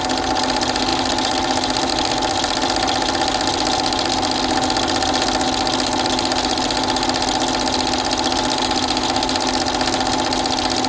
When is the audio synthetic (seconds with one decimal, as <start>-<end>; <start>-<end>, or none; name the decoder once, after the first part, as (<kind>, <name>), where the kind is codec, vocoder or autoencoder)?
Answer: none